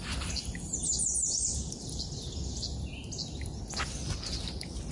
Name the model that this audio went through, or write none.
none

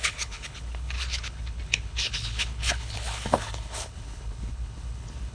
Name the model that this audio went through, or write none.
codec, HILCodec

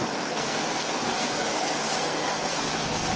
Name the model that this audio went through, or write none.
codec, SNAC